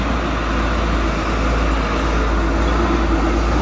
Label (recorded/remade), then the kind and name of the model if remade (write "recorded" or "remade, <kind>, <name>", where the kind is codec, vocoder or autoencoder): recorded